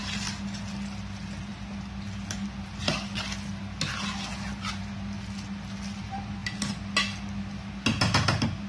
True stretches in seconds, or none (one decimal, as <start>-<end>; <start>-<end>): 0.0-8.7